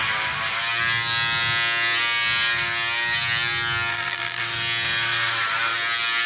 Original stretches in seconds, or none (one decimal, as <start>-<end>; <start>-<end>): 0.0-3.9; 4.4-6.3